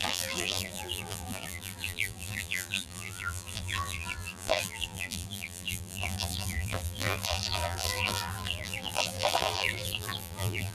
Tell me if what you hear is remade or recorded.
remade